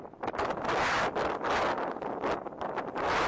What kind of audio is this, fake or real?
real